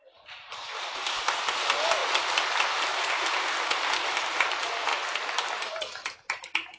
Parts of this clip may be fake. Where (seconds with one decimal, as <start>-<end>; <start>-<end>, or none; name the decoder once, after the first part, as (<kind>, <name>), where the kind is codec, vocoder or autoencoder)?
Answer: 0.7-1.3 (vocoder, BigVGAN v2); 4.9-5.8